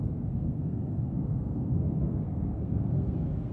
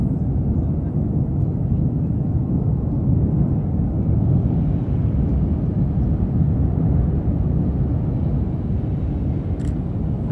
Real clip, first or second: second